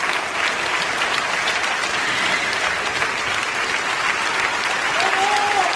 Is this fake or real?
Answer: real